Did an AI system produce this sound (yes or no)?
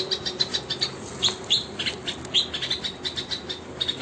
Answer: no